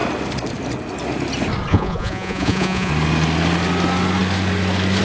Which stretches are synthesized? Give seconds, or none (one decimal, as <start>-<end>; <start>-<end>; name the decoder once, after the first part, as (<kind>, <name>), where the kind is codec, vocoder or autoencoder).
1.7-2.9 (vocoder, Vocos)